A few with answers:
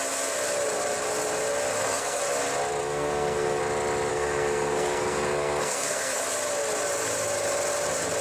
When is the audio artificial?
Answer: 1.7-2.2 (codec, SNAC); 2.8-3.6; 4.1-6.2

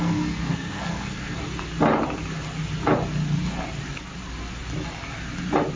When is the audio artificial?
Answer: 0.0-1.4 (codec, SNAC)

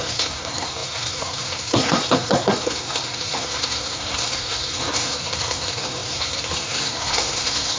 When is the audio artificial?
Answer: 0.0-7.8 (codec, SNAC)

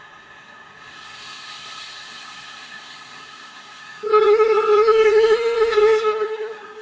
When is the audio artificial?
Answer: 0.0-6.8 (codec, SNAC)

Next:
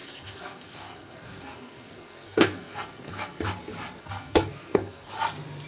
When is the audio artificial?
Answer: 0.0-3.4 (codec, SNAC); 4.0-5.1

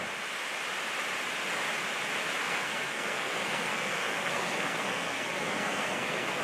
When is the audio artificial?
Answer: 2.4-6.4 (codec, SNAC)